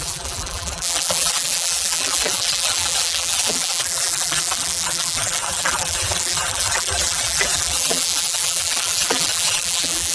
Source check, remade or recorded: remade